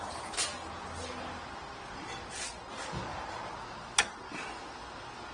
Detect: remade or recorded recorded